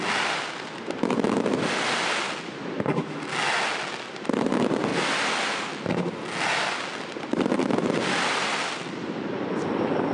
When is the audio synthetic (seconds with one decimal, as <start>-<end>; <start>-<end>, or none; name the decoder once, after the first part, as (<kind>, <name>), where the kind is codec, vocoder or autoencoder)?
none